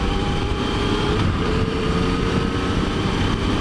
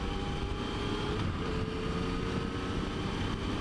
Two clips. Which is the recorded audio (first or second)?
second